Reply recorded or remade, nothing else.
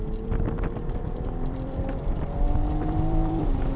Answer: remade